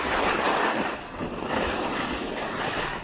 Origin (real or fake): real